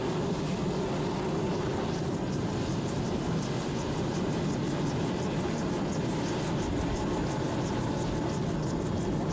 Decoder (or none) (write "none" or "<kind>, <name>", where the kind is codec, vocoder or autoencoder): none